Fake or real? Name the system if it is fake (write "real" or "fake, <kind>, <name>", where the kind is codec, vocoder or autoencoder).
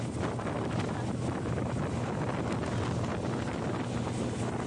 real